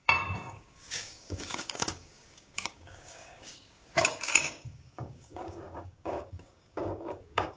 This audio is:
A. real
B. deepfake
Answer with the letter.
B